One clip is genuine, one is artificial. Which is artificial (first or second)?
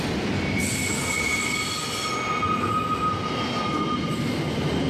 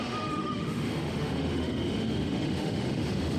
second